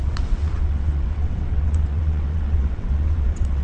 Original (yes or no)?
no